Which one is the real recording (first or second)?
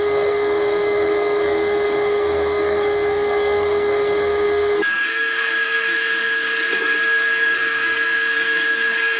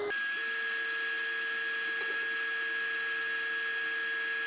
second